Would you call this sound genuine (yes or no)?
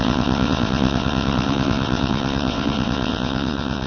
no